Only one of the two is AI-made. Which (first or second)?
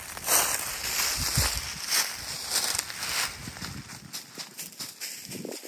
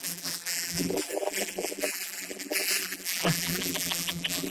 second